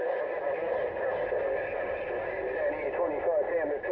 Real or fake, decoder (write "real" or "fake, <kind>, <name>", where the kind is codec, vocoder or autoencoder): real